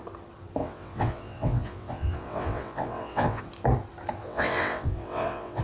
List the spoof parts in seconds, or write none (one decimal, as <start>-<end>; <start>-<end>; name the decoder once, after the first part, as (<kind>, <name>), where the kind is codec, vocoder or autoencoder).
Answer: 0.6-3.4 (vocoder, WaveNeXt); 4.2-5.6